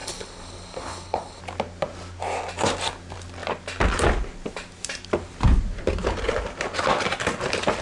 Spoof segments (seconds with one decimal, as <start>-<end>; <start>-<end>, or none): 0.0-1.4